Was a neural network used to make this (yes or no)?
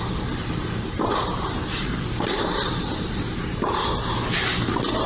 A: no